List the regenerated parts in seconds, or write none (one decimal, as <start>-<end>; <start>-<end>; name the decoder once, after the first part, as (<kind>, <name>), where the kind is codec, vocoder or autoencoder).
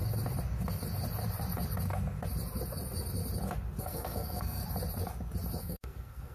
3.8-4.6 (codec, SNAC); 5.6-6.3